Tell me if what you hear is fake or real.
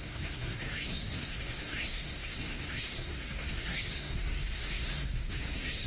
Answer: fake